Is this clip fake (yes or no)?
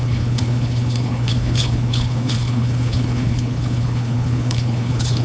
yes